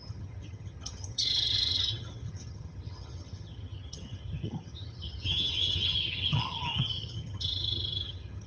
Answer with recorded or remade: remade